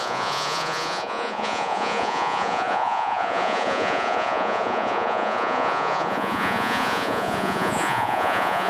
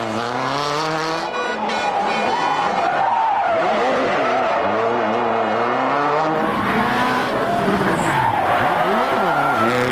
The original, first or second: second